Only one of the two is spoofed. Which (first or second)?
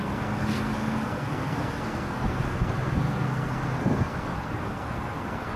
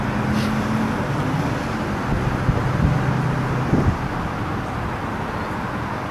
first